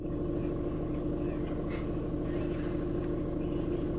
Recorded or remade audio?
recorded